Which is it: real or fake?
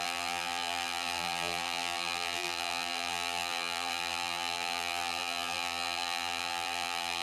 fake